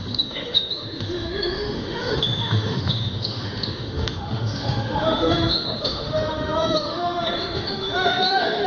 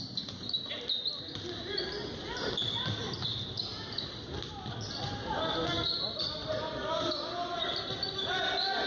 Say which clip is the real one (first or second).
second